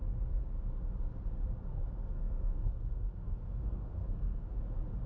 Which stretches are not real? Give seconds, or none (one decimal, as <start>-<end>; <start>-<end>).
1.7-4.6